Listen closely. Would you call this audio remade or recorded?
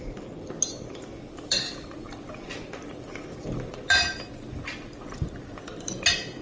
recorded